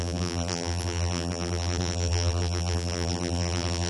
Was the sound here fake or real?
fake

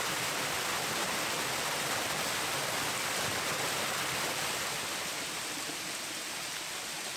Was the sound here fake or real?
real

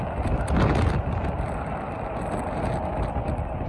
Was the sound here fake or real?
real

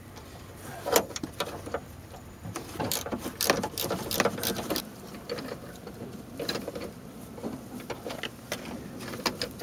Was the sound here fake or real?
fake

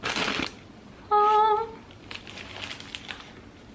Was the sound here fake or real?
real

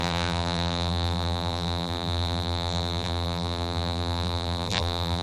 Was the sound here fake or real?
fake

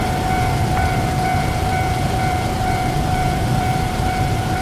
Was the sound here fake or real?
fake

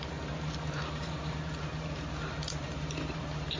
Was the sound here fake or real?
fake